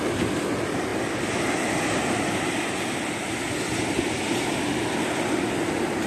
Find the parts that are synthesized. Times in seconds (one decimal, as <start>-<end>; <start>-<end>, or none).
none